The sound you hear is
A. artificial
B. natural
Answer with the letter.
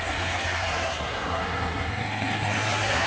A